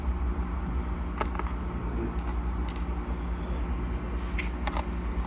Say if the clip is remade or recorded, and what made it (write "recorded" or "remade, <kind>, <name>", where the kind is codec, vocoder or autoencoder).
recorded